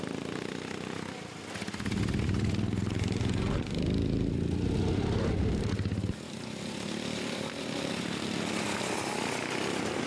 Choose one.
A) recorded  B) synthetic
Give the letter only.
A